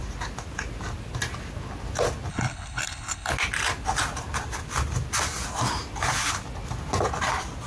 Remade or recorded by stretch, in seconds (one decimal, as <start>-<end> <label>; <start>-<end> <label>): 0.0-2.3 recorded; 2.3-3.3 remade; 3.3-7.7 recorded